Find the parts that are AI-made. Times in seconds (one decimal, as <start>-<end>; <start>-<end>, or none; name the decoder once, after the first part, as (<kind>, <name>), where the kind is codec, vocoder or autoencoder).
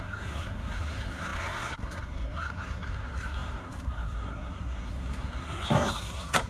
0.0-6.5 (codec, SNAC)